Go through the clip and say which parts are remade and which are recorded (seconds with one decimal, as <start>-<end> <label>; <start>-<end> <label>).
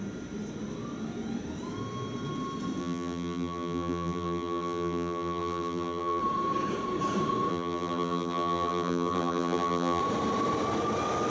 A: 0.0-2.8 recorded; 2.8-6.2 remade; 6.2-7.5 recorded; 7.5-10.0 remade; 10.0-11.3 recorded